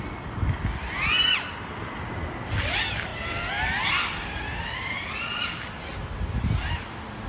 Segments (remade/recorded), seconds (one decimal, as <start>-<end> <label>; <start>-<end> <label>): 0.0-7.3 recorded